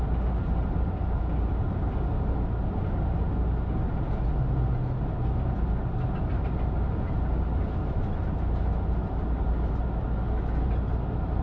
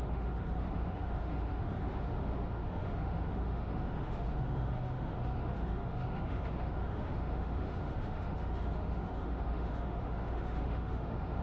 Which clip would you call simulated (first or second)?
second